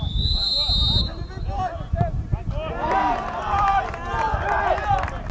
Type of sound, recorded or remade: recorded